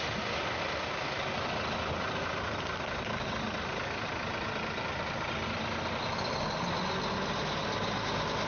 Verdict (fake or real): real